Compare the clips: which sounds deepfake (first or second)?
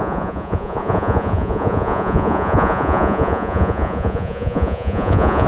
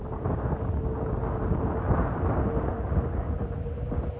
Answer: first